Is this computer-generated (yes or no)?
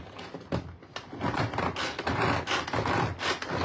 no